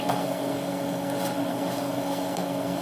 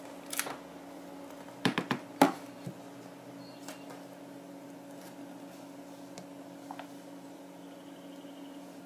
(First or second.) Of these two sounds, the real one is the second